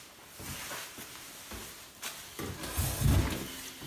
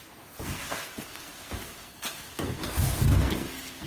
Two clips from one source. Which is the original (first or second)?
first